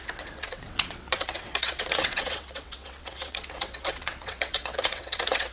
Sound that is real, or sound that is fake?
fake